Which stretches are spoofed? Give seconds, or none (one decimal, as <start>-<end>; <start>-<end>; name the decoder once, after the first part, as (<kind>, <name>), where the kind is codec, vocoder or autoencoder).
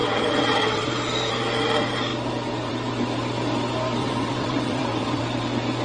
0.0-0.9 (vocoder, WaveNeXt); 4.0-5.2